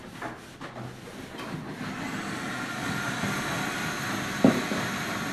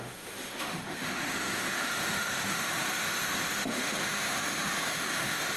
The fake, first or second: second